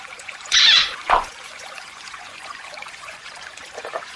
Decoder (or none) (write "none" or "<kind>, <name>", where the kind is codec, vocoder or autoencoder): vocoder, Vocos